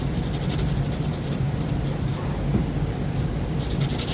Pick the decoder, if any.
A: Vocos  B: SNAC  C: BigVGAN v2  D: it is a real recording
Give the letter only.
D